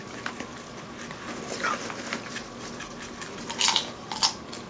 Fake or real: real